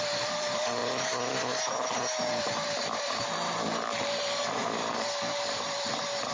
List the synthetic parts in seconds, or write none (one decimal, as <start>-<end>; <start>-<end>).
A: 0.0-0.8; 2.4-6.3